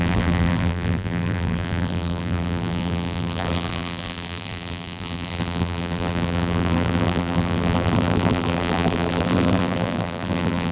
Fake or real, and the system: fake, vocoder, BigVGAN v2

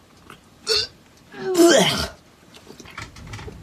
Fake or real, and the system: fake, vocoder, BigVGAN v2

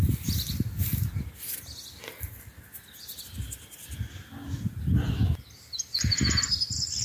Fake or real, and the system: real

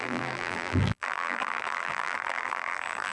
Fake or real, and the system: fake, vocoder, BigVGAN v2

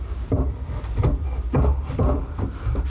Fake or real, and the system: fake, vocoder, BigVGAN v2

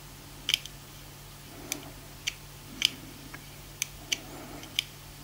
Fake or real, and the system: real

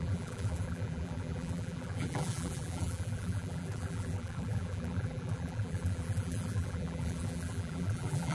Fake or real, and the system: fake, vocoder, BigVGAN v2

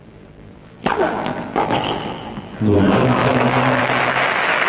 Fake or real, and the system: fake, vocoder, BigVGAN v2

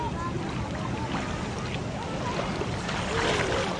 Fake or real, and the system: real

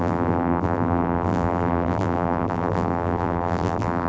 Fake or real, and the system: fake, vocoder, BigVGAN v2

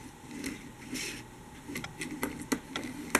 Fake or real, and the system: real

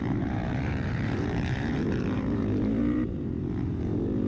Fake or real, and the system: fake, vocoder, BigVGAN v2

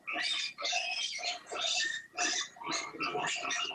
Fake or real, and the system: real